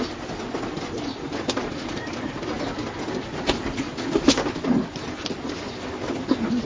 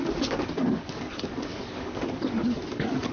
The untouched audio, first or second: first